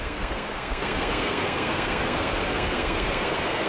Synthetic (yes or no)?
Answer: yes